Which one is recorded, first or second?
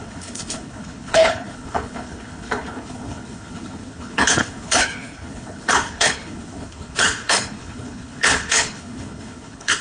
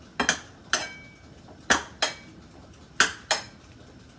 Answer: second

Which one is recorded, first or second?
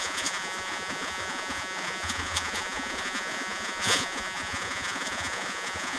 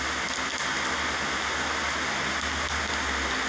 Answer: second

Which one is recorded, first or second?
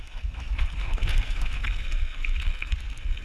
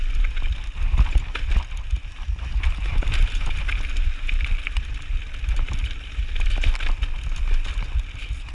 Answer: second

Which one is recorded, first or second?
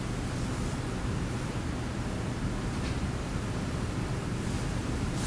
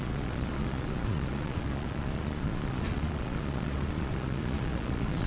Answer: first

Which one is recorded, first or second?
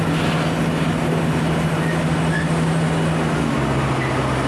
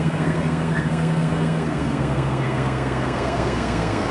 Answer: first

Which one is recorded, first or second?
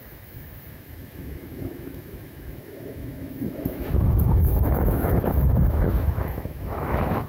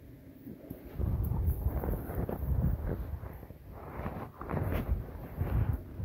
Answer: second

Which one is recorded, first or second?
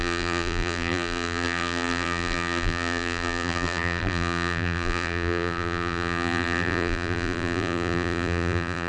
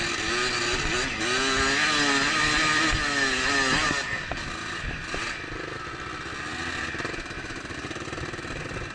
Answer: second